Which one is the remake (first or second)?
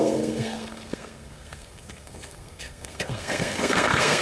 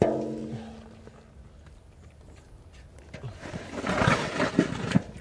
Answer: first